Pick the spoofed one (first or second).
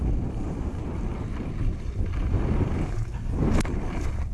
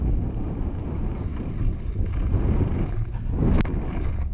first